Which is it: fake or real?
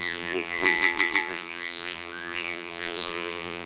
fake